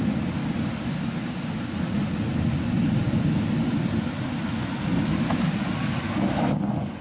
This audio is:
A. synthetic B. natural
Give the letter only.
B